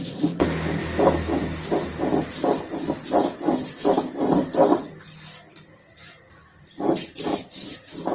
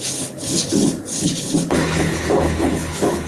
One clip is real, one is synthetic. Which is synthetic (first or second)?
second